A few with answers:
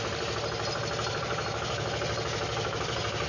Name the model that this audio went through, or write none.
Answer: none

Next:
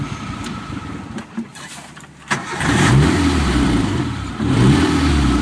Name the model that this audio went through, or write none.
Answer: vocoder, BigVGAN v2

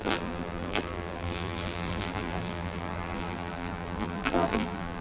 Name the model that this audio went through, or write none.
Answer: vocoder, BigVGAN v2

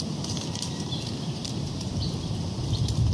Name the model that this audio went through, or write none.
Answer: vocoder, BigVGAN v2